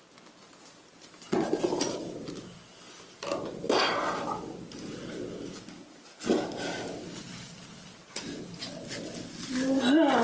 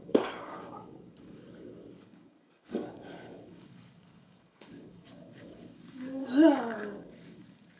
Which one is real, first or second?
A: first